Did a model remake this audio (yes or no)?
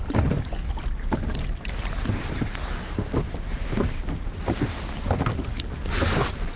no